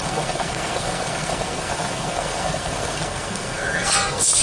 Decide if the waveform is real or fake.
fake